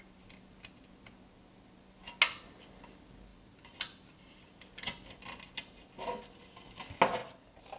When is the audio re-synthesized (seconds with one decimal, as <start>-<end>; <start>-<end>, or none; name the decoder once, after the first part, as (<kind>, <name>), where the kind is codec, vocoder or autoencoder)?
3.3-4.4 (vocoder, BigVGAN v2)